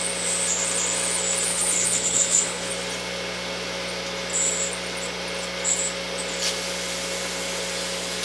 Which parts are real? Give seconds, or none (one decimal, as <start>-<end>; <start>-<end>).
0.0-1.5; 2.7-8.2